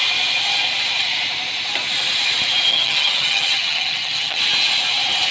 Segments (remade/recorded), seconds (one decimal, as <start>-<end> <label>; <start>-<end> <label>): 0.0-2.7 recorded; 2.7-4.4 remade; 4.4-5.3 recorded